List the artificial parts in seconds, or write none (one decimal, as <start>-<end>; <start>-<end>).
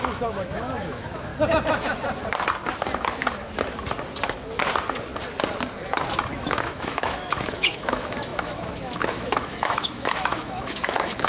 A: 0.0-1.3; 6.3-11.3